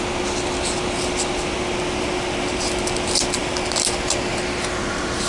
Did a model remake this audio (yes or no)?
no